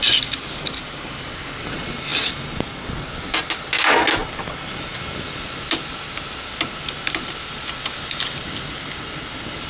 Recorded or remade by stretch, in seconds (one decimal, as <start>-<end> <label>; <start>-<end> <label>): 0.0-9.7 recorded

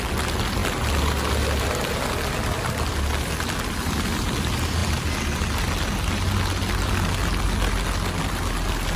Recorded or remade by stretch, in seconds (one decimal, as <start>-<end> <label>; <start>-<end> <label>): 0.0-9.0 recorded